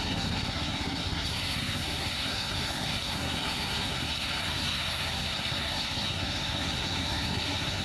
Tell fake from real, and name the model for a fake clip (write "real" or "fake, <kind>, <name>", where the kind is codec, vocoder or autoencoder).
fake, codec, SNAC